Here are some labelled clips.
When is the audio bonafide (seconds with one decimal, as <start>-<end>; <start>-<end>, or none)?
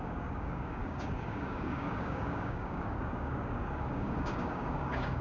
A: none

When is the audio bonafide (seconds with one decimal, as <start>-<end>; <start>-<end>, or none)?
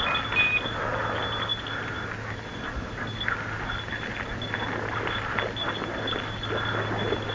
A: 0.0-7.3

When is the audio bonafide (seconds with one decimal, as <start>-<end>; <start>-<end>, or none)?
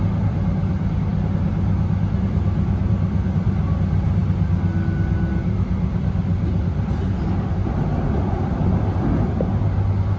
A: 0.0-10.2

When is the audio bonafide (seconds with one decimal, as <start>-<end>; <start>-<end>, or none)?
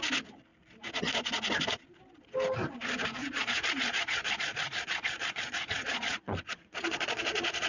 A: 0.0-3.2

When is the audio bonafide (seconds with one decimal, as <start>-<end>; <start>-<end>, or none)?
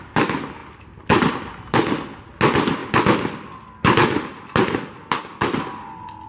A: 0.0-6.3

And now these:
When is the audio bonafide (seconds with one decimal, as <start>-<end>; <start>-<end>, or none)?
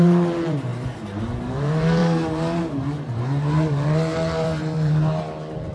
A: none